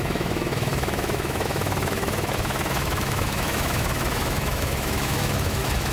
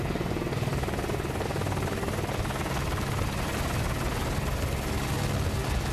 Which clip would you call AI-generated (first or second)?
first